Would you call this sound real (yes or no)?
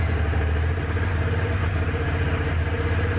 yes